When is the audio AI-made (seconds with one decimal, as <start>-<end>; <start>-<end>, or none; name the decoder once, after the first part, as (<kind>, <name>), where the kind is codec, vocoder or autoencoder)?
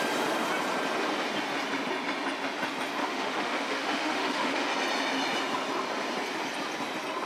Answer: 3.0-4.7 (autoencoder, DAC-VAE)